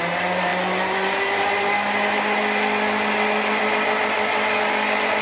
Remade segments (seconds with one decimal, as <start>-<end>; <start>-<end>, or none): none